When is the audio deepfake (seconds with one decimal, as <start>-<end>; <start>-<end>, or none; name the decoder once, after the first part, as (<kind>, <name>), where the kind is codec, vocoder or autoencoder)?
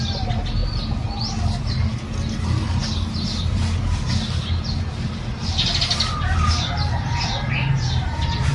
none